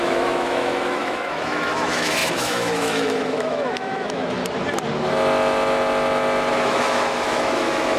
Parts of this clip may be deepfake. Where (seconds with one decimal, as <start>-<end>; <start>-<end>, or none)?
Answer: 0.0-4.4; 6.5-8.0